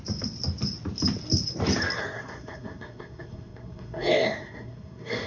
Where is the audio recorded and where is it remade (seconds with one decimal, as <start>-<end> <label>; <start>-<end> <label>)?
0.0-2.0 recorded; 2.0-5.3 remade